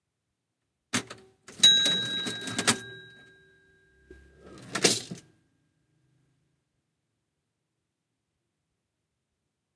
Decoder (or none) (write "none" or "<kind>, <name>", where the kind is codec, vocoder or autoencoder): none